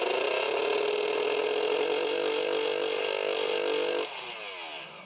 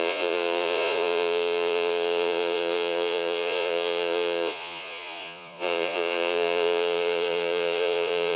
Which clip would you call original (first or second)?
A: first